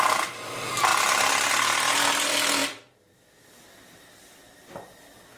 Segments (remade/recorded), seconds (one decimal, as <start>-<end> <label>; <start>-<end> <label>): 0.0-5.4 recorded